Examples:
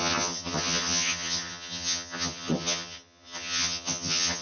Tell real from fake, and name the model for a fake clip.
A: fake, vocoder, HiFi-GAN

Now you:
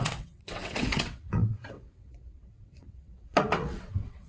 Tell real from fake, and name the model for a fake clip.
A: fake, vocoder, WaveNeXt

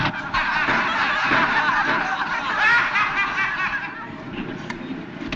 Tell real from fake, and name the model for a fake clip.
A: real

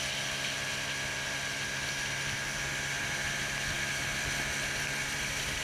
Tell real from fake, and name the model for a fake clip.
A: real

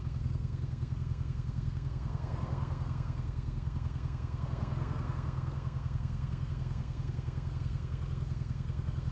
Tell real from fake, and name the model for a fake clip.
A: fake, codec, SNAC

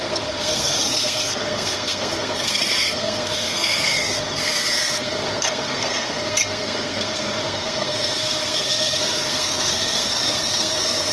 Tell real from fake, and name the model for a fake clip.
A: fake, codec, SNAC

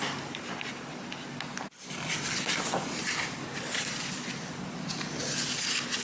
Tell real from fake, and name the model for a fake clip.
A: real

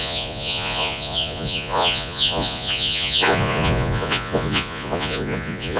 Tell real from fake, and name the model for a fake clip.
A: fake, vocoder, Vocos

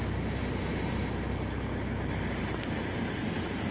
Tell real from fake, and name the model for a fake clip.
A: real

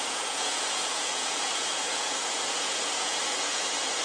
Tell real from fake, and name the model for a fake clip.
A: fake, vocoder, Vocos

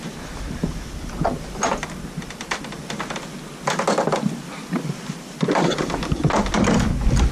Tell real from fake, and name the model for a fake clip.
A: real